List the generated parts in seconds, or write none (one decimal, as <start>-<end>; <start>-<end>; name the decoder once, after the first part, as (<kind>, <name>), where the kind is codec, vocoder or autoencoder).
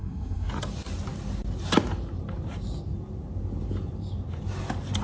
0.0-0.5 (codec, SNAC)